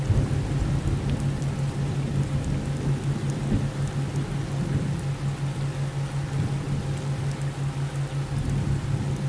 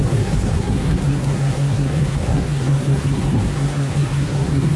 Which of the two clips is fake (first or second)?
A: second